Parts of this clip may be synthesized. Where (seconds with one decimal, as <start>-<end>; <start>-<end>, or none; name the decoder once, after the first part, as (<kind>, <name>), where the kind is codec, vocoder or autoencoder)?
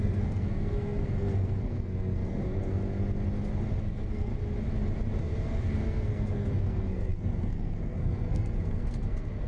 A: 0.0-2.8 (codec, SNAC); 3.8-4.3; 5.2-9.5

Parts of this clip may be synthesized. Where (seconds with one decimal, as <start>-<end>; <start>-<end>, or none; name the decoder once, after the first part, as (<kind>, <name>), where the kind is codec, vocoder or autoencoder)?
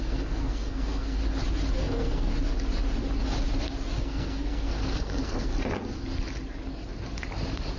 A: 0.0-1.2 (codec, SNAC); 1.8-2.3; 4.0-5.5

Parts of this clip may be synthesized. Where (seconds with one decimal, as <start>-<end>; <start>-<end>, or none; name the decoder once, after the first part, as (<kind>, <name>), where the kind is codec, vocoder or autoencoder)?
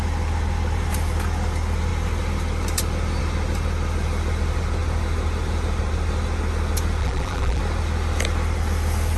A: 7.0-7.6 (vocoder, BigVGAN v2)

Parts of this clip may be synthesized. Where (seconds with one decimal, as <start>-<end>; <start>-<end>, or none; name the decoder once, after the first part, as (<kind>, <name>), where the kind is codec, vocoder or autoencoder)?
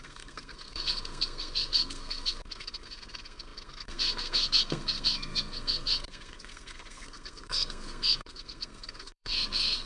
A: 0.0-9.9 (codec, SNAC)